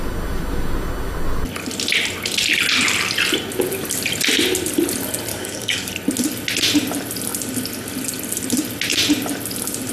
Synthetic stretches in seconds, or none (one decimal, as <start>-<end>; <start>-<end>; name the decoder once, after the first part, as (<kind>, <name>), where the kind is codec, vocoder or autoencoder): 5.3-5.9 (codec, DAC)